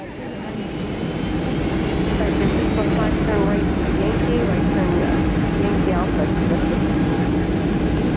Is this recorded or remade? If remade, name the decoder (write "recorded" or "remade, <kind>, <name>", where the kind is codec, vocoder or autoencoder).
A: recorded